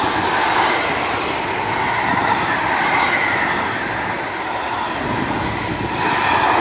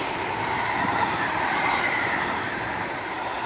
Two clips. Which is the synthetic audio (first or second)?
second